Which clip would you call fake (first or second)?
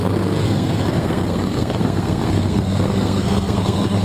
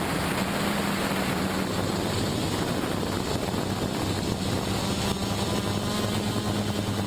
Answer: first